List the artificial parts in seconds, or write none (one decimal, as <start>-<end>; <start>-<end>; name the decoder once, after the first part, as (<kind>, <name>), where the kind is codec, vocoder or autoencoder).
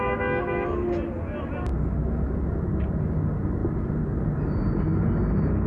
none